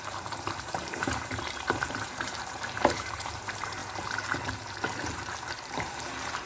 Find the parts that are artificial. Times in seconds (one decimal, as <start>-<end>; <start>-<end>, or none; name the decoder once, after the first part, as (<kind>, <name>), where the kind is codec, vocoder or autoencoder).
0.0-3.8 (vocoder, BigVGAN v2); 5.3-6.5